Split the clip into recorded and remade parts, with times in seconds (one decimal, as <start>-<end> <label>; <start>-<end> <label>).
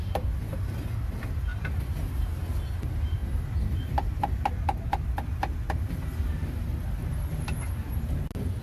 0.0-1.5 recorded; 1.5-2.2 remade; 2.2-8.6 recorded